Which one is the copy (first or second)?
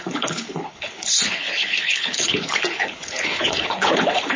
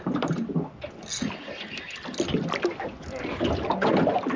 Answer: first